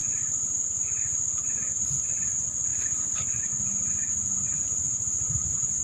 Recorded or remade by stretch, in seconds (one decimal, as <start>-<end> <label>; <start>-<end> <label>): 0.0-0.7 remade; 0.7-2.7 recorded; 2.7-3.4 remade; 3.4-4.5 recorded; 4.5-5.8 remade